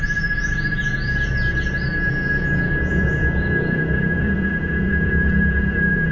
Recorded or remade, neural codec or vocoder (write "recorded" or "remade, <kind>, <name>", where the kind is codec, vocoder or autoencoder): remade, vocoder, BigVGAN v2